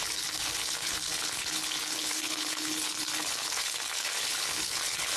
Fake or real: fake